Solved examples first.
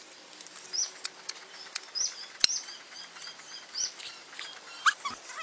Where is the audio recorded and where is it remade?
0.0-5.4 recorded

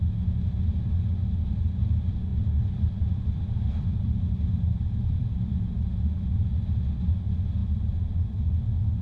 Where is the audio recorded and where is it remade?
0.0-2.3 recorded; 2.3-5.3 remade; 5.3-7.6 recorded; 7.6-8.4 remade; 8.4-9.0 recorded

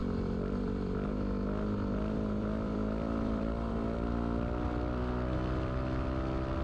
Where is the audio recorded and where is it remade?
0.0-3.7 remade; 3.7-6.6 recorded

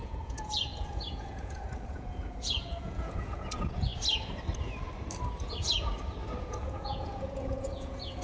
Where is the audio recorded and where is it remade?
0.0-3.9 remade; 3.9-5.4 recorded; 5.4-5.9 remade; 5.9-6.4 recorded; 6.4-8.2 remade

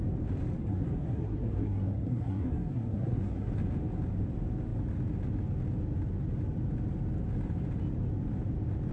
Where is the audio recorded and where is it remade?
0.0-0.6 recorded; 0.6-3.5 remade; 3.5-8.9 recorded

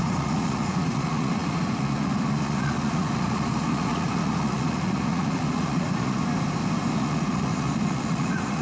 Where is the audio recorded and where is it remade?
0.0-6.2 remade; 6.2-6.9 recorded; 6.9-8.6 remade

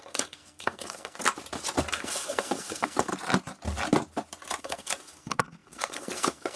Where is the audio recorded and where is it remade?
0.0-1.2 remade; 1.2-1.9 recorded; 1.9-3.1 remade; 3.1-4.6 recorded; 4.6-6.6 remade